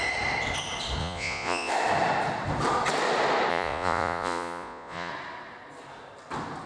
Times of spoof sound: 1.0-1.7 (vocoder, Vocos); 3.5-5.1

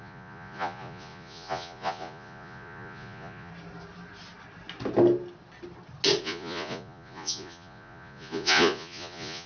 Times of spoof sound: 0.0-3.5 (vocoder, Vocos); 6.2-9.5

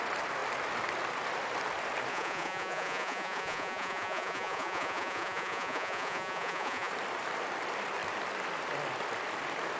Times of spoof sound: 2.1-6.9 (vocoder, Vocos)

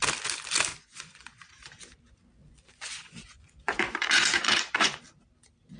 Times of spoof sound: 0.7-1.5 (vocoder, Vocos); 2.4-5.0